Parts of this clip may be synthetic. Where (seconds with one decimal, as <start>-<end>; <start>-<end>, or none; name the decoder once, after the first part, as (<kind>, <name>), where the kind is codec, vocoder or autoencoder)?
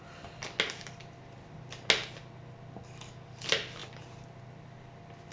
none